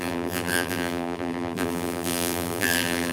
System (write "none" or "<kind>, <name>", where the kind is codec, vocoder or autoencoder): vocoder, BigVGAN v2